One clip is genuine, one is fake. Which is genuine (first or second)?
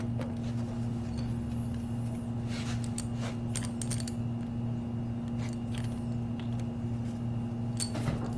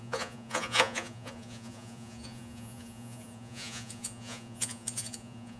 first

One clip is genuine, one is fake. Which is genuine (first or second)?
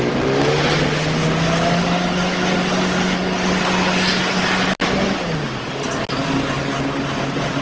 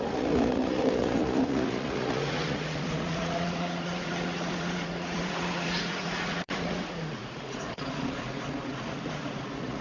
first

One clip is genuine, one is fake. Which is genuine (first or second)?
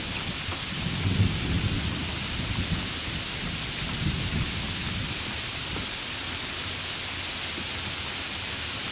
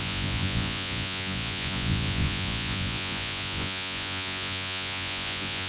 first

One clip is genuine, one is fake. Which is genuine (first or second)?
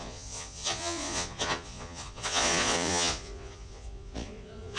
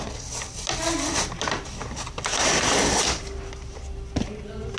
second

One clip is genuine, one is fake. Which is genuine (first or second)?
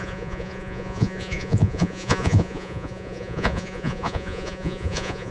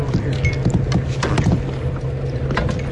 second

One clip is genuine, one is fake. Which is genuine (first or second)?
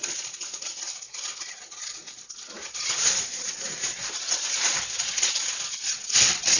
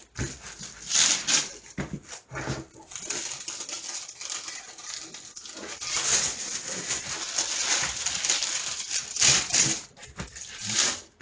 second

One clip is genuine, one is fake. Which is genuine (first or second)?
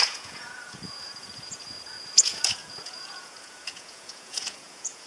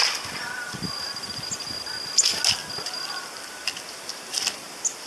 second